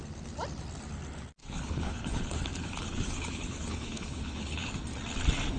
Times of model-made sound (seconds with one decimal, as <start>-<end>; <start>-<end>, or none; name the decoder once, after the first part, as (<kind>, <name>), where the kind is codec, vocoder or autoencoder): 1.4-4.7 (codec, HILCodec)